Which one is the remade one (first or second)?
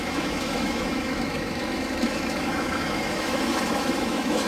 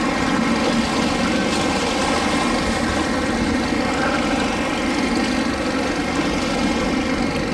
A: first